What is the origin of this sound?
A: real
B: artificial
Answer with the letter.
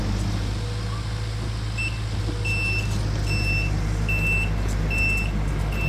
A